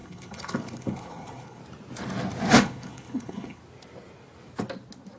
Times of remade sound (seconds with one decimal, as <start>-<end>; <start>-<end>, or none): 0.0-1.6; 2.5-3.6